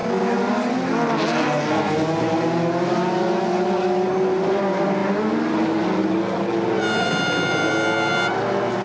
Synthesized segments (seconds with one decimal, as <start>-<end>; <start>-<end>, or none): none